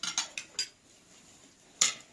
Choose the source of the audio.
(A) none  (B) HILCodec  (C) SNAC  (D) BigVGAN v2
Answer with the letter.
A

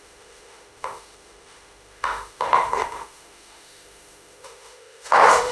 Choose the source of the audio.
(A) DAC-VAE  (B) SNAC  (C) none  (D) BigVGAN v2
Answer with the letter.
A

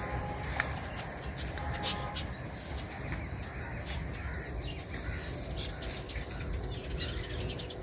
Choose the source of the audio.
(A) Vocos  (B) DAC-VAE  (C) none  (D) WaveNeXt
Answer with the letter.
C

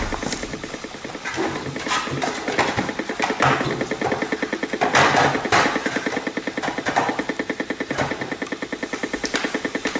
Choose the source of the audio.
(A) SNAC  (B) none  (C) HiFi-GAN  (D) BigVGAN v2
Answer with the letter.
B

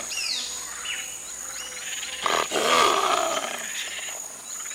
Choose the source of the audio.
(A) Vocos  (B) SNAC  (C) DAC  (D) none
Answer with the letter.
D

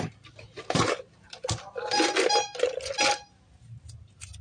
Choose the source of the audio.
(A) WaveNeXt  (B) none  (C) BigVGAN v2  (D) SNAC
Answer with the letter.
B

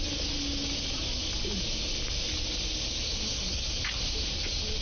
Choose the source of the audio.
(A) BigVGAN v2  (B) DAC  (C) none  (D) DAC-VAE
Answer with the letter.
C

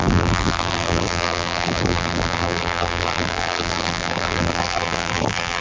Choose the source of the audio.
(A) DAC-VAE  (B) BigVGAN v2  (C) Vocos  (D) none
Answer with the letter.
B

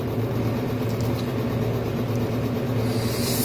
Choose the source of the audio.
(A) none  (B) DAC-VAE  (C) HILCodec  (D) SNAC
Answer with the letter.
A